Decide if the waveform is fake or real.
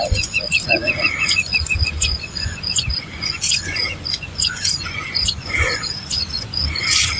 fake